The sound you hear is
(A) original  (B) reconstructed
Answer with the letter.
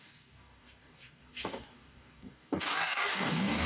B